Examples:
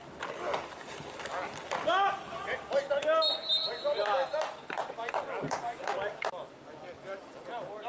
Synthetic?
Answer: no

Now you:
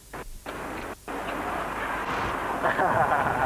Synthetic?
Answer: no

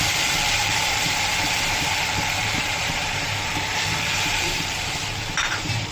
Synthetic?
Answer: yes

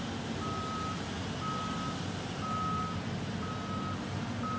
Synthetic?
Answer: no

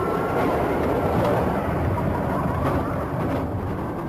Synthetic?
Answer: yes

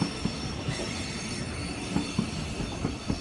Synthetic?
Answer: yes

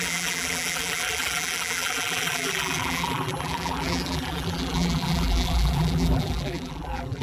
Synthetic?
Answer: yes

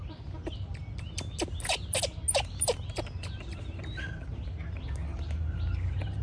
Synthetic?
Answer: no